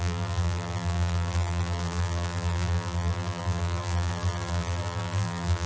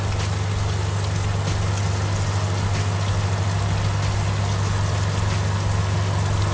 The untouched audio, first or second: second